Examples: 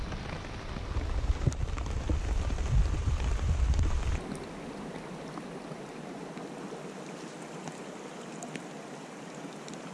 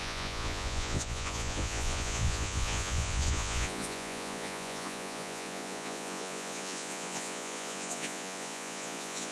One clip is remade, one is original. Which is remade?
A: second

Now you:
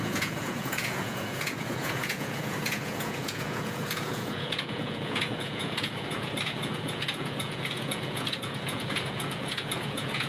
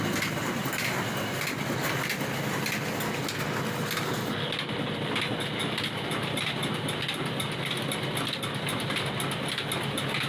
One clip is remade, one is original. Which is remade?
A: first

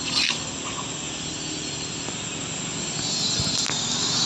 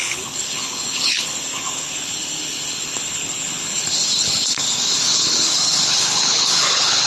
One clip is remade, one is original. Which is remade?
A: second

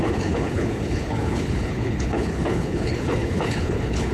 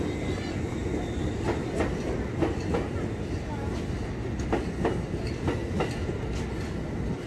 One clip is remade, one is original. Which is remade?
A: first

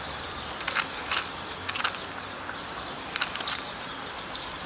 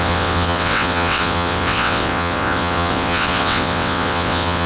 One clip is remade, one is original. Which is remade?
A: second